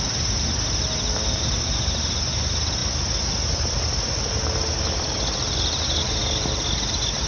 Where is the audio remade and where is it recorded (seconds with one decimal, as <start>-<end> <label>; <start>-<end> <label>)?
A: 0.0-7.3 recorded